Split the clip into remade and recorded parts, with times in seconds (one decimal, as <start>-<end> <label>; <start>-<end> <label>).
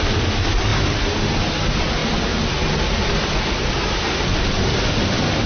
0.0-5.5 recorded